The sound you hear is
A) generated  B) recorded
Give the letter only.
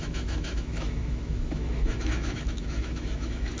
A